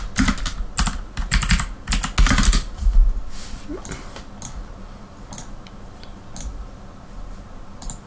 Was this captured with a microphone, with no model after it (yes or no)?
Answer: yes